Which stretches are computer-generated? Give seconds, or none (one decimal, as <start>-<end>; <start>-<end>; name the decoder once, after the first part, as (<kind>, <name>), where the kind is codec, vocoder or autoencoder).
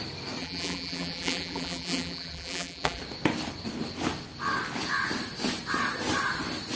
0.4-3.0 (vocoder, BigVGAN v2)